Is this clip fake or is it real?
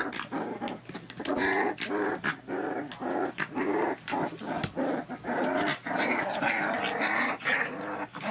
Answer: real